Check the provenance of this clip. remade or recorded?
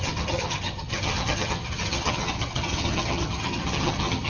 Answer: remade